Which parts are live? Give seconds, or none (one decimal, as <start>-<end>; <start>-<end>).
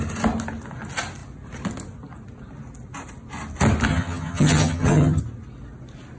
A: 0.0-3.9; 5.2-6.2